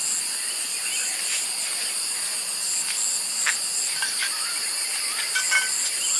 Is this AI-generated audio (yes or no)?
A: no